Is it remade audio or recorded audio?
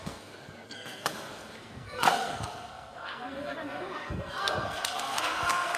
remade